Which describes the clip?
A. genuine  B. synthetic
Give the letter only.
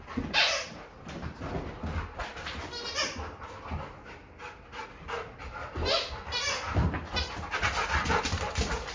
A